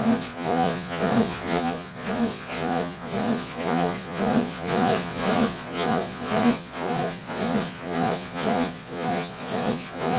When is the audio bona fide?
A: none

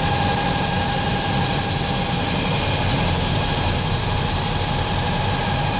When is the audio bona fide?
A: 0.0-5.8

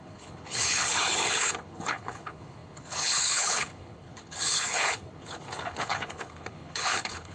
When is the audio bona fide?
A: none

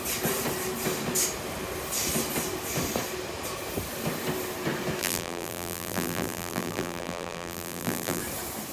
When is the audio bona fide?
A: 0.0-5.0; 8.2-8.7

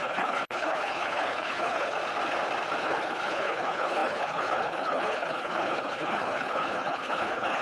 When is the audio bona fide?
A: 2.0-2.8

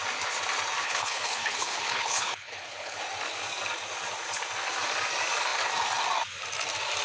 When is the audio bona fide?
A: 0.0-0.8; 3.0-7.0